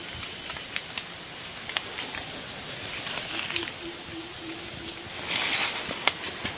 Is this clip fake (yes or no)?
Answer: no